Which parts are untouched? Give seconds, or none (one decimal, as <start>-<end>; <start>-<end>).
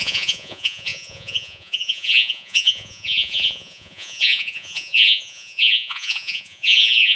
none